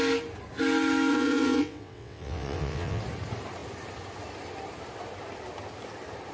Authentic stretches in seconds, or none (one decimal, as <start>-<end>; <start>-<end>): 0.0-1.1; 3.0-6.3